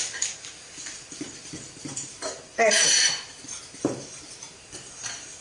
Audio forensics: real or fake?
fake